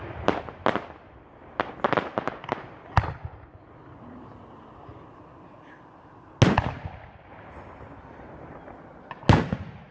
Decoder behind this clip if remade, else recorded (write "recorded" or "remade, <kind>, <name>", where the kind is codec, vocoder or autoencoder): recorded